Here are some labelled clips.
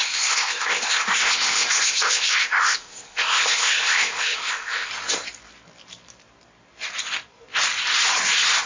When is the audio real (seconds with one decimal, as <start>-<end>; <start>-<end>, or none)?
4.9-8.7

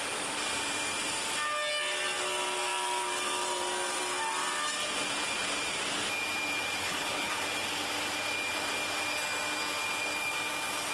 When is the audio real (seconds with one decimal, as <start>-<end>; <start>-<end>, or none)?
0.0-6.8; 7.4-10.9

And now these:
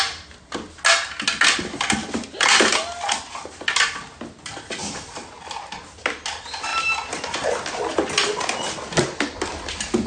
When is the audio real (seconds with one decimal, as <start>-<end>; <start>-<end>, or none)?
0.0-10.1

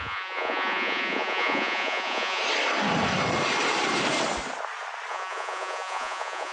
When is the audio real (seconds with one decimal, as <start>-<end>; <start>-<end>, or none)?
2.4-5.1

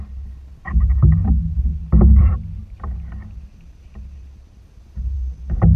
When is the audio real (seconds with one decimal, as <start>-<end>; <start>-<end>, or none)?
0.0-1.7; 2.6-5.8

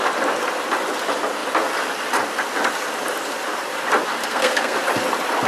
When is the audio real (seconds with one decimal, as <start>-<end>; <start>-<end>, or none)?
0.0-4.2; 4.8-5.5